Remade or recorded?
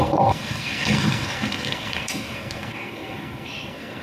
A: remade